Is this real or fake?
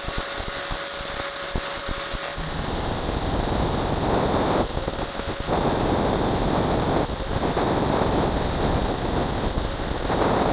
real